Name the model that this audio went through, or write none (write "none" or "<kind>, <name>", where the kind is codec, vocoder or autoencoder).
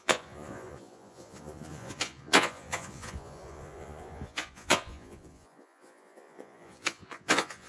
vocoder, Vocos